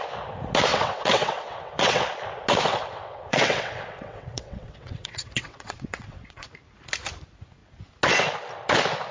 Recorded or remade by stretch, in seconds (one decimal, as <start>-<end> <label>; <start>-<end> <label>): 0.0-0.7 recorded; 0.7-2.0 remade; 2.0-2.7 recorded; 2.7-6.5 remade; 6.5-9.1 recorded